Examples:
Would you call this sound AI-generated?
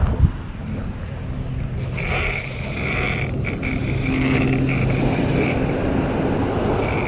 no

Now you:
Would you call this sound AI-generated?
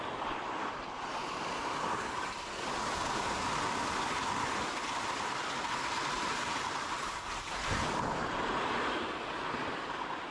no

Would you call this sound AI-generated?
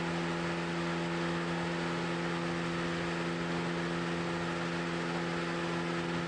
no